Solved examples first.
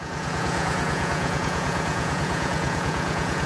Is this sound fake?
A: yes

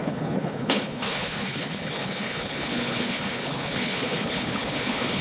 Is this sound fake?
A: yes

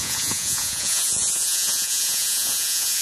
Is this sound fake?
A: yes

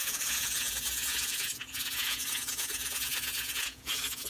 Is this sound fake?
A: yes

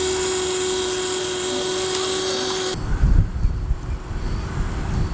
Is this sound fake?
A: no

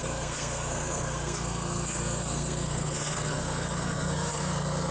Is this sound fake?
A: yes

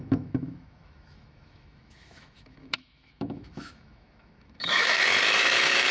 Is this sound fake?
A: yes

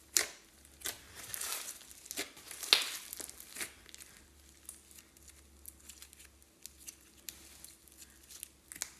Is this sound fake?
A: no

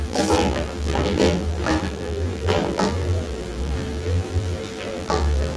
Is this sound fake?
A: yes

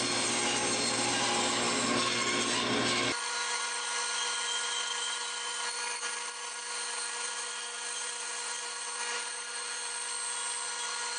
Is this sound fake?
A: no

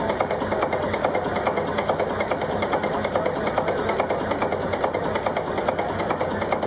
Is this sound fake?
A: no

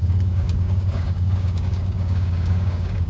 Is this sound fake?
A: yes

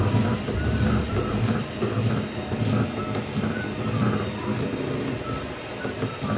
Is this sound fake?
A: no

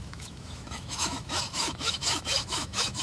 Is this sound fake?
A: yes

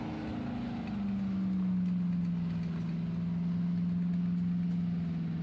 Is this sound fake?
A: no